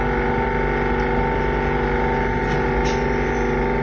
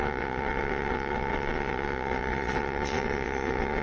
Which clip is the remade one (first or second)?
second